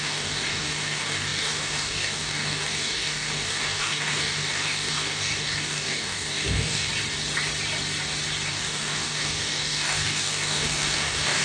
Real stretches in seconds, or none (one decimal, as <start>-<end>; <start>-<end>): 6.9-8.5